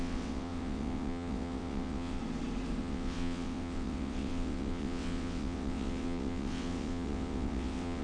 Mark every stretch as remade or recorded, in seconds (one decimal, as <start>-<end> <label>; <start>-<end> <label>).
0.0-2.2 remade; 2.2-2.8 recorded; 2.8-8.0 remade